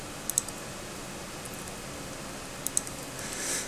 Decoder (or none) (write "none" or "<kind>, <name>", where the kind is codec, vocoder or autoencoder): none